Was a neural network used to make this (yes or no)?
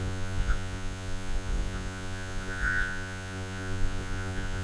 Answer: yes